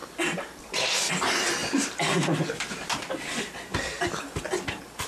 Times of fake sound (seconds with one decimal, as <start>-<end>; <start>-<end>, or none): 0.0-1.1; 1.6-2.9; 3.7-4.4